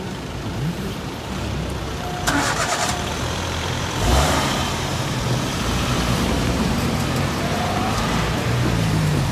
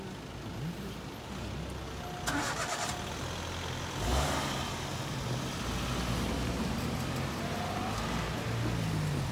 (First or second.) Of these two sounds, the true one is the second